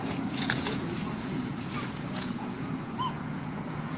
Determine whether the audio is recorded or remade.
remade